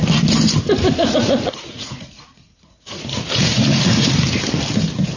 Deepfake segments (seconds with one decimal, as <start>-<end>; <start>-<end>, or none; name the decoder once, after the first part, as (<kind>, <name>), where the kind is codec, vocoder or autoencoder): 1.0-4.1 (vocoder, Vocos)